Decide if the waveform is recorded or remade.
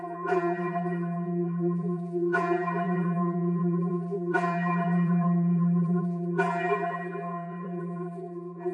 remade